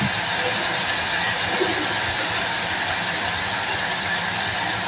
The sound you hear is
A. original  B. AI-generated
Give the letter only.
A